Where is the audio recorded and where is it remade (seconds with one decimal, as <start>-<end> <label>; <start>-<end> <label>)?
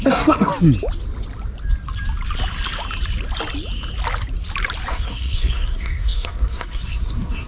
0.0-0.5 remade; 0.5-4.9 recorded; 4.9-7.5 remade